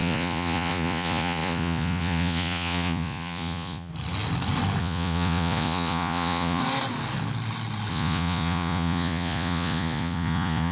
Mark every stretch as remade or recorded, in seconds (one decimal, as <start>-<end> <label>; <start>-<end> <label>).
0.0-3.9 remade; 3.9-4.8 recorded; 4.8-6.6 remade; 6.6-7.9 recorded; 7.9-10.7 remade